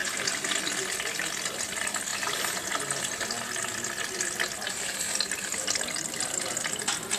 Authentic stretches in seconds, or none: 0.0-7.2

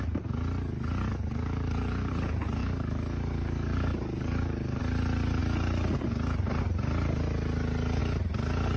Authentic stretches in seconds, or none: 0.0-1.1; 2.1-2.6; 4.8-8.8

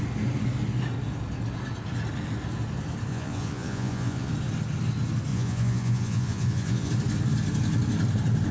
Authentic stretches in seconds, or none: 0.0-3.1; 4.3-5.3; 6.9-8.5

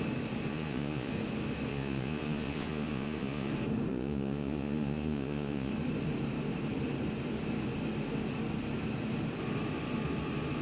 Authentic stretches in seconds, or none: 0.0-0.5; 1.1-1.7; 3.5-3.9; 5.7-10.6

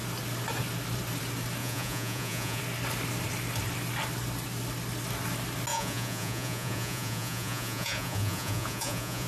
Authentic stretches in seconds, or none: 0.0-1.6; 2.6-5.7

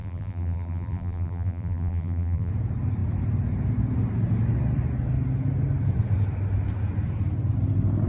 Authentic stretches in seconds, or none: 2.5-8.1